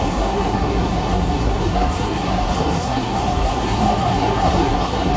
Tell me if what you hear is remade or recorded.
remade